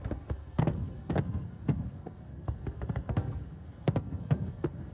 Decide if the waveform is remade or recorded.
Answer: remade